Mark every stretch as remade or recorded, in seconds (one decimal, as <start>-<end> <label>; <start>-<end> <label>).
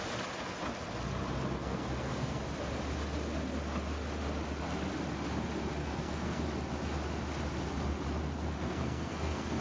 0.0-1.6 recorded; 1.6-2.4 remade; 2.4-5.8 recorded; 5.8-6.4 remade; 6.4-8.4 recorded; 8.4-9.6 remade